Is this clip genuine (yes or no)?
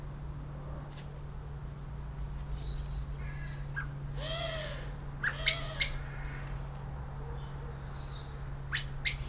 yes